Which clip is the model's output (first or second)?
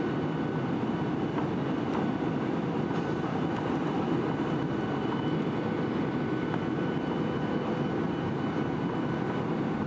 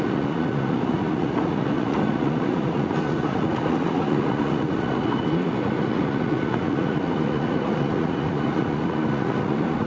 second